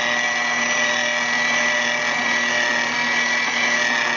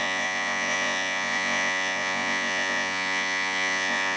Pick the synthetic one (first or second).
second